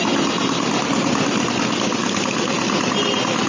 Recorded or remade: recorded